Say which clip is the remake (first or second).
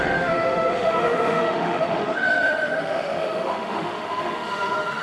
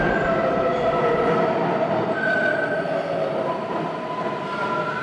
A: first